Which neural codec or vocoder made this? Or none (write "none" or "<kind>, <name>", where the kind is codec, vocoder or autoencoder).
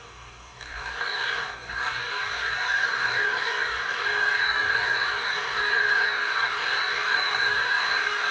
codec, DAC